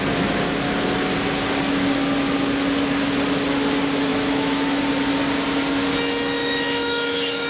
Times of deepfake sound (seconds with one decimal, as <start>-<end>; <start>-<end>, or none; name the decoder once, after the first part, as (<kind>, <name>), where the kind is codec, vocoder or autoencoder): 4.1-4.8 (autoencoder, DAC-VAE); 6.4-7.5